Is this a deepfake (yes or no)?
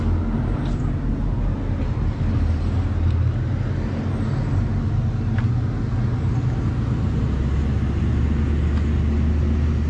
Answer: no